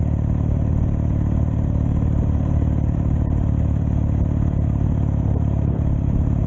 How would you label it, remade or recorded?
remade